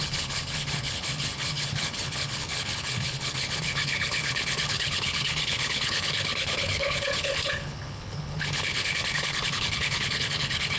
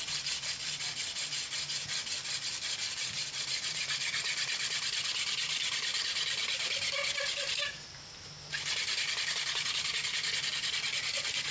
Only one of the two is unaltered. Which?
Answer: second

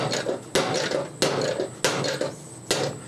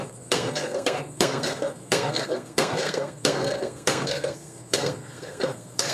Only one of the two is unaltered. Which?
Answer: first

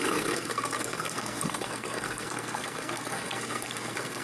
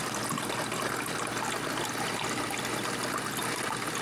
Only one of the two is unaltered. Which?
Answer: second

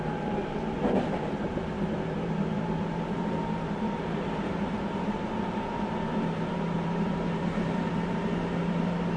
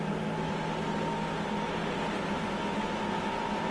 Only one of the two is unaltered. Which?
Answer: second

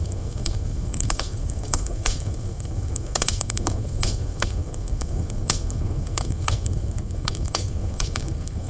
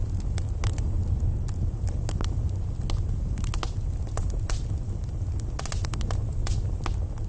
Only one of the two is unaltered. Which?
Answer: second